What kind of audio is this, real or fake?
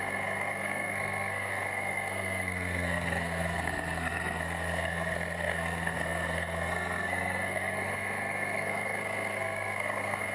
fake